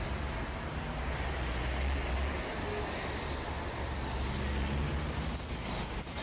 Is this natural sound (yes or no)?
yes